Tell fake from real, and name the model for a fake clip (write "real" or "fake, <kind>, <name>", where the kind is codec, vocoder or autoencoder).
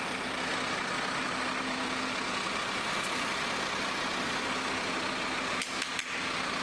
real